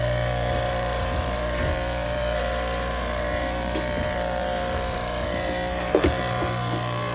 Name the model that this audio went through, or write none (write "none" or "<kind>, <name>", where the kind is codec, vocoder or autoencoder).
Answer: vocoder, BigVGAN v2